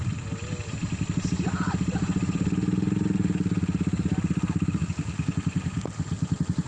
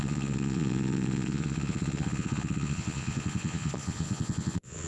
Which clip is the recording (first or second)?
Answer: first